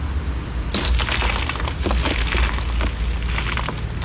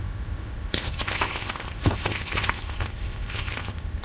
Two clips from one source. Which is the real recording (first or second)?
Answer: first